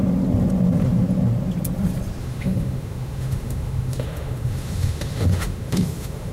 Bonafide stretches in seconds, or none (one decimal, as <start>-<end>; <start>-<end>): 0.0-2.2